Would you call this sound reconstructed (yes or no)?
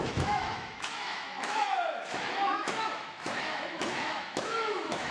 yes